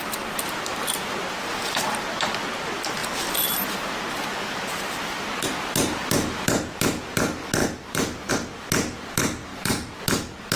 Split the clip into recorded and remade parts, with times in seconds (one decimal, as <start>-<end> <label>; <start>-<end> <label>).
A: 0.0-7.6 recorded; 7.6-8.3 remade; 8.3-9.5 recorded; 9.5-10.0 remade; 10.0-10.6 recorded